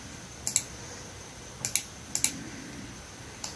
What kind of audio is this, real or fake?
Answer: real